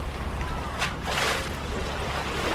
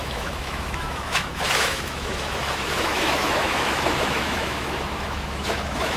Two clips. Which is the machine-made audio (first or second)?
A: second